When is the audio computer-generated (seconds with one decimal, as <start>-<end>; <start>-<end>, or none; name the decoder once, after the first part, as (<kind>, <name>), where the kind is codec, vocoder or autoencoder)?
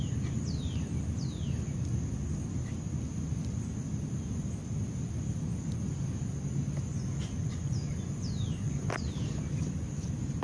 6.9-8.9 (vocoder, Vocos)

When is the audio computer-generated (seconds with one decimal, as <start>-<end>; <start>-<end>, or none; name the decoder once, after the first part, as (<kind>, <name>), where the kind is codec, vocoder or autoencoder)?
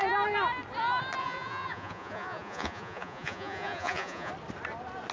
1.2-4.3 (vocoder, Vocos)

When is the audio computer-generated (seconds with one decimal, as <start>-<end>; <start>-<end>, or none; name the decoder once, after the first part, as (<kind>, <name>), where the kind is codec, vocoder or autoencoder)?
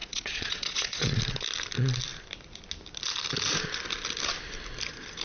0.0-1.2 (vocoder, Vocos)